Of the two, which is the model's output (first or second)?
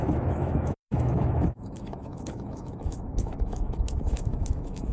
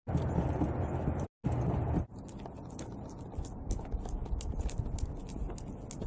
first